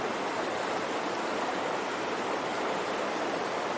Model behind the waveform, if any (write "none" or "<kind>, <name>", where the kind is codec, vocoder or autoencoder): none